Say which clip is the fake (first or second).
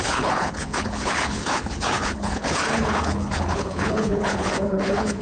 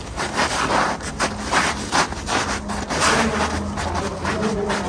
first